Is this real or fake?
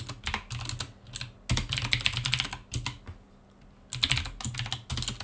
real